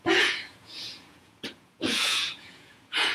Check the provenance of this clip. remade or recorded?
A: remade